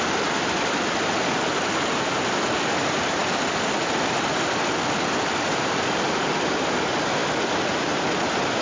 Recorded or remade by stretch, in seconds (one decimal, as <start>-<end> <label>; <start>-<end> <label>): 0.0-3.2 remade; 3.2-5.5 recorded; 5.5-7.2 remade; 7.2-8.6 recorded